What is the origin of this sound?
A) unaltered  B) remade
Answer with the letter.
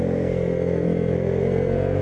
B